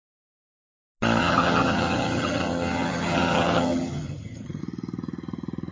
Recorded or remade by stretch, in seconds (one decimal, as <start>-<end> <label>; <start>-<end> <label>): 0.0-1.2 recorded; 1.2-4.6 remade; 4.6-5.7 recorded